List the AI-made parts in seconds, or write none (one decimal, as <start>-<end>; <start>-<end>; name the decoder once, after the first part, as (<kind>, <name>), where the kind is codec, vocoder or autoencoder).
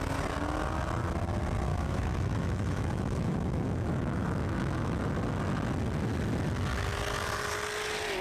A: 1.7-5.0 (autoencoder, DAC-VAE)